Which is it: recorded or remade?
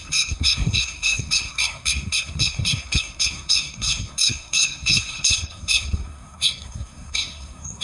remade